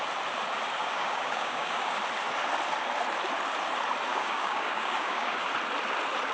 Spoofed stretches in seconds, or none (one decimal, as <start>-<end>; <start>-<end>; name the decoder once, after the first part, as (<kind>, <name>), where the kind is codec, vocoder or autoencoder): 0.8-2.0 (codec, DAC); 4.1-5.5